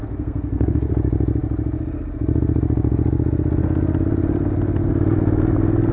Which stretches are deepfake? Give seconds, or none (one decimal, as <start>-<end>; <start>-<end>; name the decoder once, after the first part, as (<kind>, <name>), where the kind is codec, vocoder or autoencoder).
0.0-0.9 (codec, SNAC)